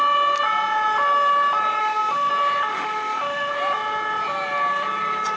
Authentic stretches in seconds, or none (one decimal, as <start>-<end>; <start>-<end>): 0.0-1.8; 2.3-2.7; 3.5-5.4